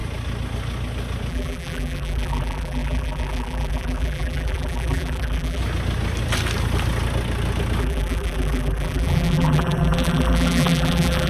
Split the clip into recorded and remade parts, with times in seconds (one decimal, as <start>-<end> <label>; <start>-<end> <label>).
0.0-1.3 recorded; 1.3-5.6 remade; 5.6-7.8 recorded; 7.8-11.3 remade